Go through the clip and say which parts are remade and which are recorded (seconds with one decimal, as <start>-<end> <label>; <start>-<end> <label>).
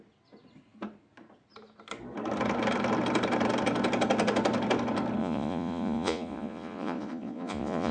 0.0-5.2 recorded; 5.2-7.9 remade